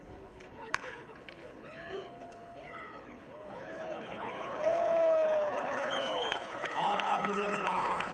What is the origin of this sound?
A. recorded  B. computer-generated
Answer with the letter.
B